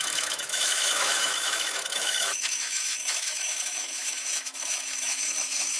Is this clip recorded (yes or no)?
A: no